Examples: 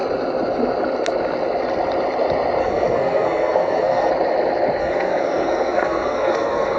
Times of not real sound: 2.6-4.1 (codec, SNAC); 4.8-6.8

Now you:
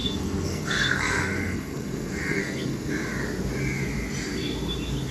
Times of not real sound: 0.0-2.9 (codec, SNAC)